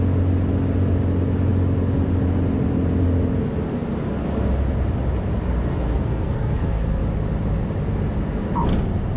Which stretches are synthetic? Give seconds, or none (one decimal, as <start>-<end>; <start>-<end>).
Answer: 5.5-7.0

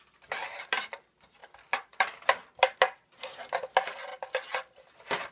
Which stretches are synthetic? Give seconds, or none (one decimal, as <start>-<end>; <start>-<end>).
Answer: none

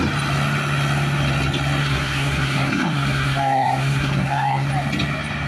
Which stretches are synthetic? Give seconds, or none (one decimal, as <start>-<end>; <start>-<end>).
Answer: 1.8-4.7

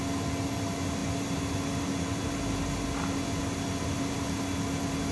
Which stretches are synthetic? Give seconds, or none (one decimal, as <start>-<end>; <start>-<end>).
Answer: none